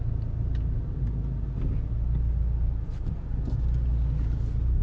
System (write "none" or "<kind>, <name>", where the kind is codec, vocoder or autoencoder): none